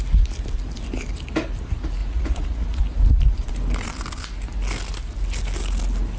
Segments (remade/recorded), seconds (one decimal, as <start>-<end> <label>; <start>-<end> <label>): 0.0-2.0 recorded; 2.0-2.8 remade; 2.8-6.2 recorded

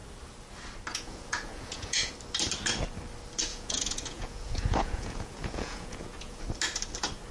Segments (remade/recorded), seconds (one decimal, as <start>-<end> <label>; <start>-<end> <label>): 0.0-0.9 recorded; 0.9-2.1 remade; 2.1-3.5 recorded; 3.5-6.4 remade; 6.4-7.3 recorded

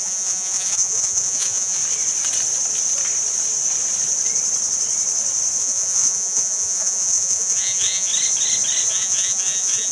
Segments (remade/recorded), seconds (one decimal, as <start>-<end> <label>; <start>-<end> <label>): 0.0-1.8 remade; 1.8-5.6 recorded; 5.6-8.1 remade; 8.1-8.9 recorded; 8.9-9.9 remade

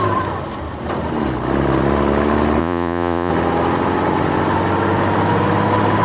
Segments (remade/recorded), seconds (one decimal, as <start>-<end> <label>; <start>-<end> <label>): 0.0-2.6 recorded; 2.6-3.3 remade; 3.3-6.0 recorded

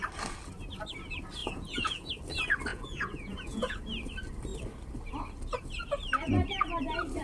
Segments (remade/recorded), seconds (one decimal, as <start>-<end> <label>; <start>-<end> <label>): 0.0-1.4 recorded; 1.4-2.1 remade; 2.1-2.7 recorded; 2.7-3.8 remade; 3.8-7.2 recorded

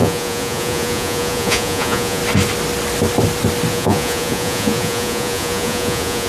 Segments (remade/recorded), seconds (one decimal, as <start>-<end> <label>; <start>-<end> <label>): 0.0-2.2 remade; 2.2-3.7 recorded; 3.7-6.3 remade

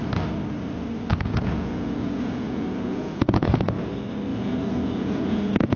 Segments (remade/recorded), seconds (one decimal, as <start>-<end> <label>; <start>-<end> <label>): 0.0-1.1 recorded; 1.1-3.9 remade; 3.9-4.3 recorded; 4.3-5.8 remade